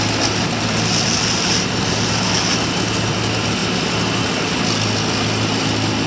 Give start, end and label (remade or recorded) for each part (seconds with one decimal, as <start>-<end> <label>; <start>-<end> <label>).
0.0-3.6 recorded; 3.6-4.6 remade; 4.6-6.1 recorded